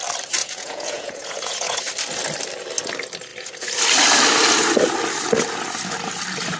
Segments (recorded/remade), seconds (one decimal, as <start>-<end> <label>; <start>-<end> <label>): 0.0-0.4 recorded; 0.4-1.8 remade; 1.8-6.6 recorded